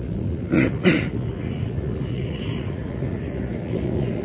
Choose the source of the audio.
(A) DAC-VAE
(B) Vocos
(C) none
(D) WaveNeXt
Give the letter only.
B